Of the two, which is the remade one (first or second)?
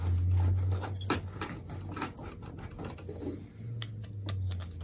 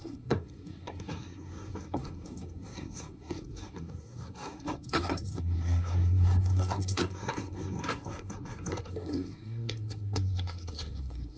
second